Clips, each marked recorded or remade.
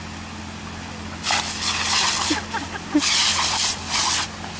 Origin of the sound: recorded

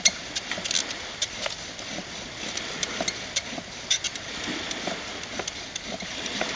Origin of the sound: recorded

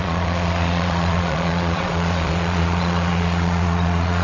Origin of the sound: remade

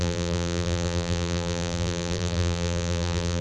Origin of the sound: remade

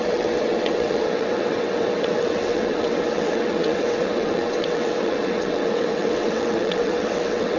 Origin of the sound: remade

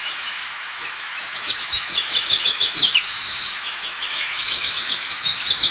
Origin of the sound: remade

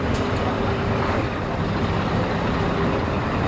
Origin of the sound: recorded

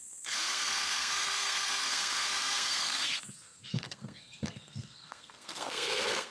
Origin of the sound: remade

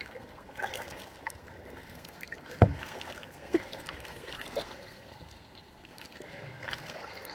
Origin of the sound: remade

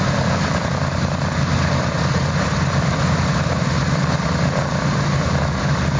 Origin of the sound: recorded